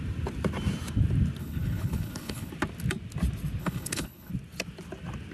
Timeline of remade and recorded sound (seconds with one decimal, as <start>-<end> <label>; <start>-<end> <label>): 0.0-1.4 recorded; 1.4-2.5 remade; 2.5-3.6 recorded; 3.6-4.3 remade; 4.3-5.3 recorded

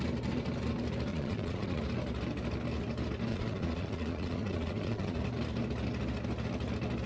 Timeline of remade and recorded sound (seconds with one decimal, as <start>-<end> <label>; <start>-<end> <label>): 0.0-1.1 recorded; 1.1-1.8 remade; 1.8-3.3 recorded; 3.3-5.2 remade; 5.2-7.1 recorded

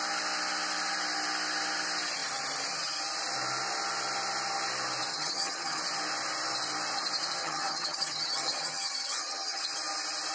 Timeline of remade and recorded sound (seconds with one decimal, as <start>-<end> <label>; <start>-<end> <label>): 0.0-5.1 recorded; 5.1-5.8 remade; 5.8-7.4 recorded; 7.4-9.6 remade; 9.6-10.3 recorded